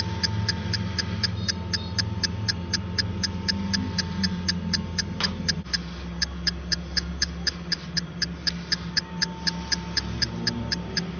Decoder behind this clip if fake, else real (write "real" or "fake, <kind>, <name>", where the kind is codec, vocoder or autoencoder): real